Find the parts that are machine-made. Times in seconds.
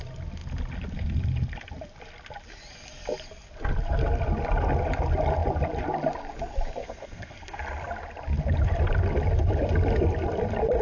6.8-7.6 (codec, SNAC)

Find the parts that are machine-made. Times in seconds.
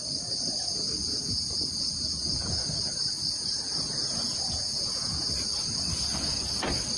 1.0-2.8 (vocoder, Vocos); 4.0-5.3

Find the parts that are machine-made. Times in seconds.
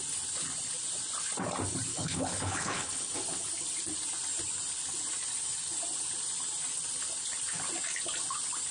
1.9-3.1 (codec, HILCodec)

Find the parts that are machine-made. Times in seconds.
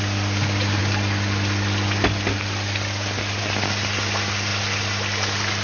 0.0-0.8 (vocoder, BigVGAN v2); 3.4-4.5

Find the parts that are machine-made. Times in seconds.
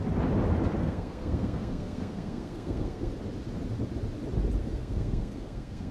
0.8-3.1 (codec, SNAC); 4.6-5.9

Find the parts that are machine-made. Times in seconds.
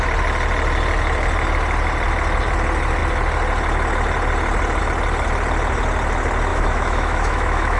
6.5-7.8 (autoencoder, DAC-VAE)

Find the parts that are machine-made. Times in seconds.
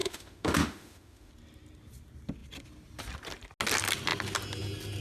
0.0-1.3 (autoencoder, DAC-VAE)